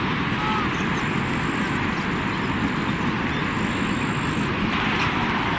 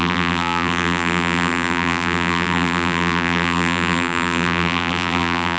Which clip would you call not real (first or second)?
second